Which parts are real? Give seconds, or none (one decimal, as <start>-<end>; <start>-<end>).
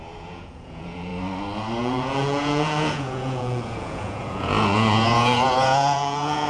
1.1-1.8